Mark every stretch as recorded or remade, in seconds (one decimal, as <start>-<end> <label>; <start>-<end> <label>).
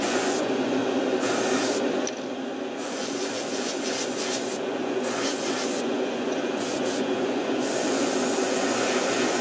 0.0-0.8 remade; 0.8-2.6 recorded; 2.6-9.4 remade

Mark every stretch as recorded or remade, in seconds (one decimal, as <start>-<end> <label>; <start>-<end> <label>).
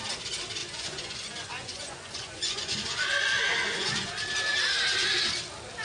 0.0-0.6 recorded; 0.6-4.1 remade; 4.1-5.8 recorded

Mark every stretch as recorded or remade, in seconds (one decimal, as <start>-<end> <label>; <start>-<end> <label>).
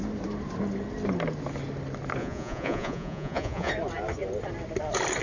0.0-2.2 recorded; 2.2-3.7 remade; 3.7-5.2 recorded